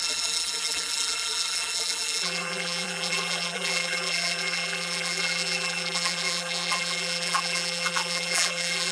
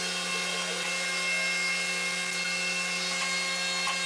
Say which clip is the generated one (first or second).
first